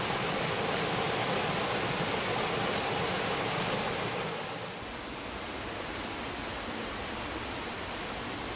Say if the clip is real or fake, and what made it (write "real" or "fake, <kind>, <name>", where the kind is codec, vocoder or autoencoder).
real